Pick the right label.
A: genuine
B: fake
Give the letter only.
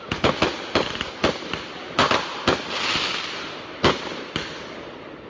A